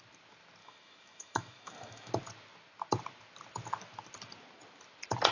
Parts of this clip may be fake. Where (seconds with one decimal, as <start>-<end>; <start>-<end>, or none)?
0.6-2.1